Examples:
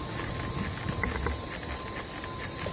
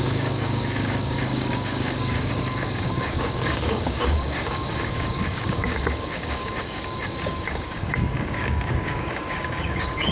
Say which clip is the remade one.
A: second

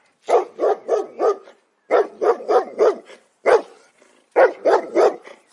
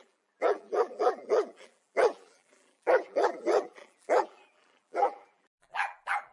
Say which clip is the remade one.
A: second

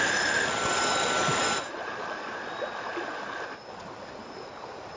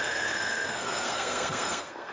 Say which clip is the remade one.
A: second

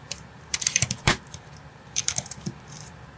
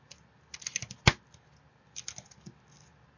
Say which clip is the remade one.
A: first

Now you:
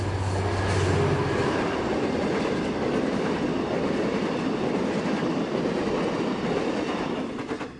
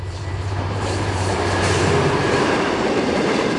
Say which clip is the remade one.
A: second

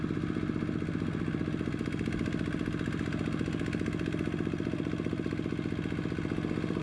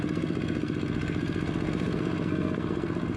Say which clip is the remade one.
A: second